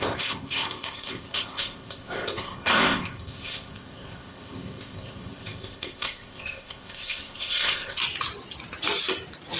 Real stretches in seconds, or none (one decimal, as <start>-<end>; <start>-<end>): 8.0-9.6